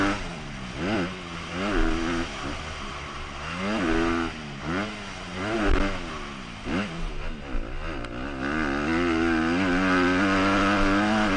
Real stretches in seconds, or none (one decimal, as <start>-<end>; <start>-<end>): 0.0-11.4